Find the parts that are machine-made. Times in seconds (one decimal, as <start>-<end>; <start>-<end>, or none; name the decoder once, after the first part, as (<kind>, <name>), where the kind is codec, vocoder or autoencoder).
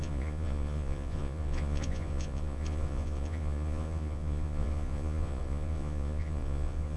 0.0-7.0 (vocoder, Vocos)